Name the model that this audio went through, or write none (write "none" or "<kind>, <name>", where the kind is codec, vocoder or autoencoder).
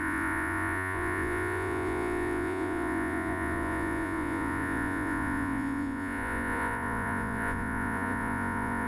vocoder, Vocos